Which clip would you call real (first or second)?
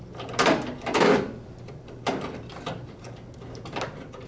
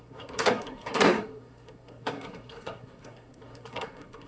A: first